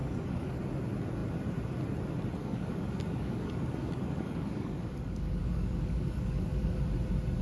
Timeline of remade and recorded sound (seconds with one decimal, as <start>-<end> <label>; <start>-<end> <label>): 0.0-0.6 remade; 0.6-2.4 recorded; 2.4-6.8 remade; 6.8-7.4 recorded